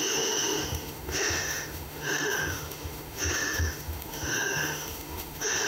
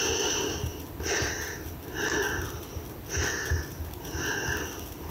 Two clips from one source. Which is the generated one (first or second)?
first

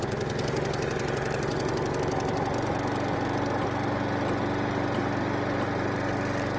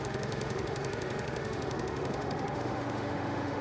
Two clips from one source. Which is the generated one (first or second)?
second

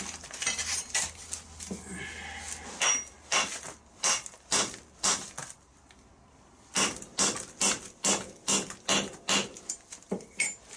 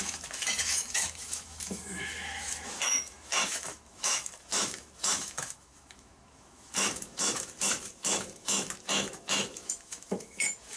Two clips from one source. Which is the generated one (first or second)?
second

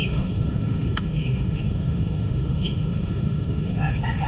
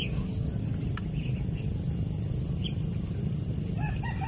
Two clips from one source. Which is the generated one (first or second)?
first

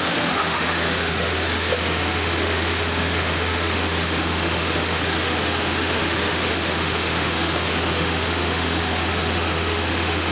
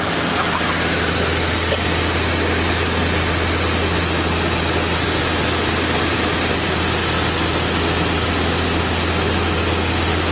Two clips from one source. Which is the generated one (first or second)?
first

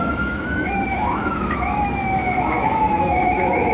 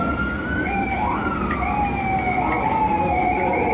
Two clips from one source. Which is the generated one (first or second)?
first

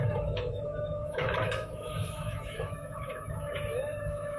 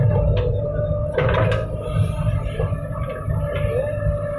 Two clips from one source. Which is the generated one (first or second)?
first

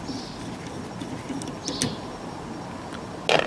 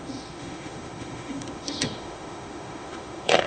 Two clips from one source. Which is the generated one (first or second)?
second